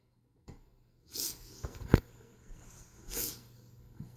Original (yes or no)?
no